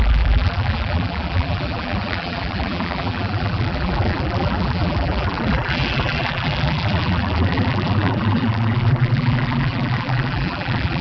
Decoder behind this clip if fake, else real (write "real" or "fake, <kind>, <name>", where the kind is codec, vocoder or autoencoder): fake, vocoder, BigVGAN v2